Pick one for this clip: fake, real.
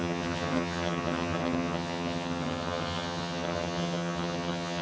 fake